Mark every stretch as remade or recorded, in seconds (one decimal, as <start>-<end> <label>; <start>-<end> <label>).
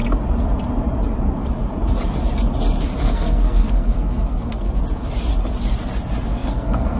0.0-3.0 recorded; 3.0-4.8 remade; 4.8-6.3 recorded; 6.3-7.0 remade